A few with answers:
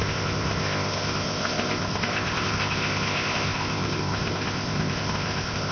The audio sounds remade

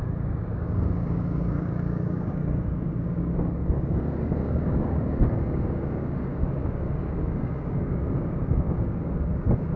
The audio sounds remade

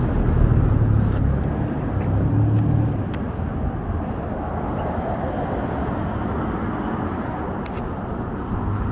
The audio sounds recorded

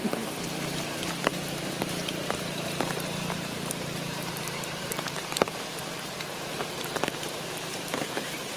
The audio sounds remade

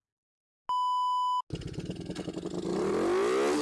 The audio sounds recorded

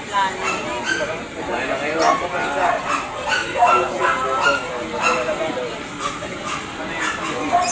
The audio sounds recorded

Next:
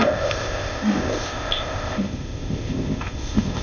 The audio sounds remade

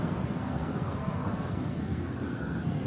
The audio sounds remade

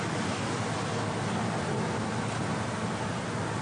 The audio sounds recorded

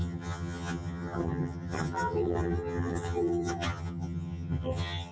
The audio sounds remade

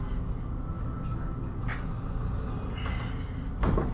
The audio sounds recorded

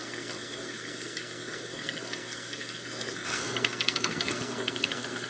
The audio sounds remade